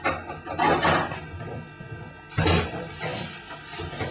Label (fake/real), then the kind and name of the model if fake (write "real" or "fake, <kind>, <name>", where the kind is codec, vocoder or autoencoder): real